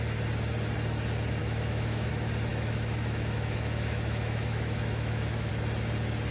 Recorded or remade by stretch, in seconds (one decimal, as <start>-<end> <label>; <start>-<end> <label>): 0.0-1.4 recorded; 1.4-2.1 remade; 2.1-2.5 recorded; 2.5-5.5 remade; 5.5-6.3 recorded